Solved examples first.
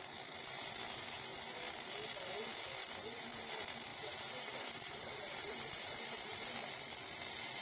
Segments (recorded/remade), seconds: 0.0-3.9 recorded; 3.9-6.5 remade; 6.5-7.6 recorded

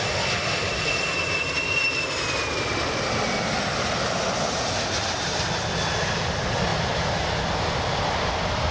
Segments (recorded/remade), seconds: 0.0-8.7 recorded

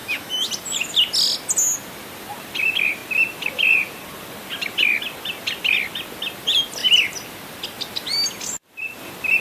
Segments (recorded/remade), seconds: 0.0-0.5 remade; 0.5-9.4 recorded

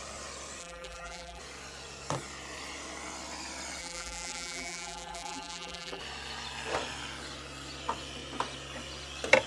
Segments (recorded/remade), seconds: 0.0-0.6 recorded; 0.6-1.4 remade; 1.4-3.8 recorded; 3.8-6.0 remade; 6.0-9.5 recorded